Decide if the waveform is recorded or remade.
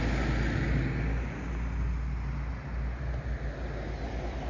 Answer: recorded